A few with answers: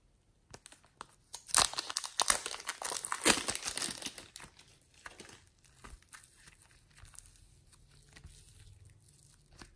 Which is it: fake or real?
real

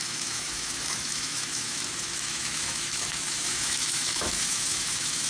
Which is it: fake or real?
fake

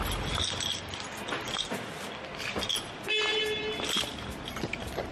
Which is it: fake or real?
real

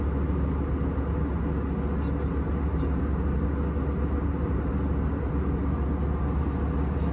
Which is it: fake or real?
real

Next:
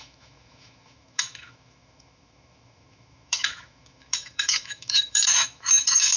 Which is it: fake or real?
fake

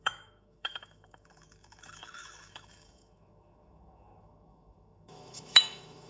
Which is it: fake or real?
fake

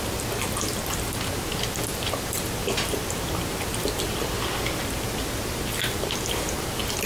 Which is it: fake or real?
real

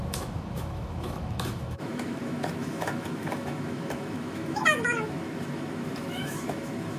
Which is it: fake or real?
fake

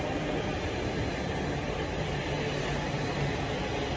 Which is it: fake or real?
real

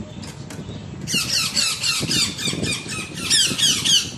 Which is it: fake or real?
real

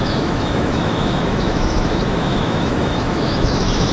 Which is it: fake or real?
fake